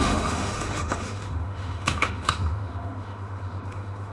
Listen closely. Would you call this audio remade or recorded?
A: remade